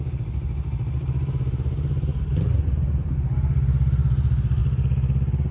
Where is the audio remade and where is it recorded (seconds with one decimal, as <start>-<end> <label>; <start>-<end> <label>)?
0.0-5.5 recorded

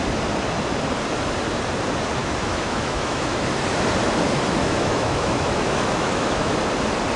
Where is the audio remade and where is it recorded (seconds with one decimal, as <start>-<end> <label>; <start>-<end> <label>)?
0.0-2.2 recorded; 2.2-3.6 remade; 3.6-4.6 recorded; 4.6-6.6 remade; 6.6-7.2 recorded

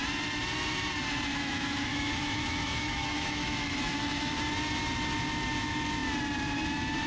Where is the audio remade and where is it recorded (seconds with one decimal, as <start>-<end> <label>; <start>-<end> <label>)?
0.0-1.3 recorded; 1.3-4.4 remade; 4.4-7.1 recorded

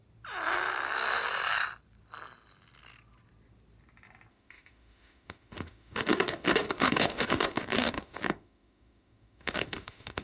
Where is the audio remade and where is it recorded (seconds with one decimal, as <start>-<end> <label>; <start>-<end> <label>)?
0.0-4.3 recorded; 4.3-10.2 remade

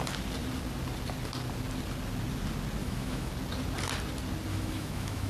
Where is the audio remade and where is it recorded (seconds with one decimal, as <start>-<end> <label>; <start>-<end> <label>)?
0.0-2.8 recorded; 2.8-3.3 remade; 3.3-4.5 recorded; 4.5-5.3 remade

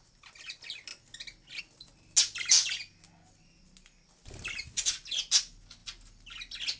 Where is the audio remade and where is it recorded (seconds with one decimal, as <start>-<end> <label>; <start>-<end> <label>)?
0.0-6.8 recorded

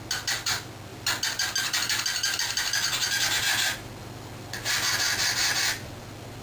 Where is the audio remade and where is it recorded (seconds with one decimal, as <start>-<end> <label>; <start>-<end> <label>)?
0.0-6.4 recorded

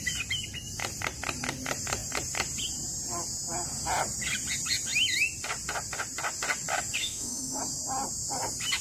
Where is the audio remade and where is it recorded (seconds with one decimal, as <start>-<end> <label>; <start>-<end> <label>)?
0.0-7.0 recorded; 7.0-7.6 remade; 7.6-8.8 recorded